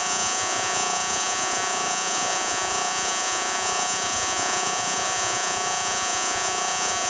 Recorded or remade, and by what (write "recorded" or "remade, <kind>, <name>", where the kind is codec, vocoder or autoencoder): remade, vocoder, Vocos